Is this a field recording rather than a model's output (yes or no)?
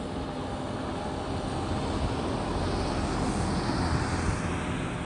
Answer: yes